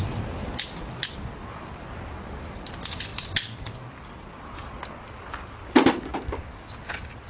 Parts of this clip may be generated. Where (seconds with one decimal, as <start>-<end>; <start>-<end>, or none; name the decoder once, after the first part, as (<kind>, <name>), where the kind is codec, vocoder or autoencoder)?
none